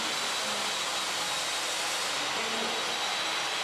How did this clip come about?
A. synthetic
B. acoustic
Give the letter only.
B